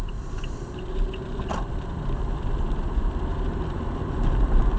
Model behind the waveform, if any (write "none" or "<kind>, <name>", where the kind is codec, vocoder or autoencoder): vocoder, BigVGAN v2